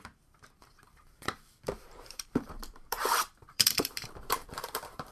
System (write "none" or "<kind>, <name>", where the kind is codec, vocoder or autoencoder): vocoder, BigVGAN v2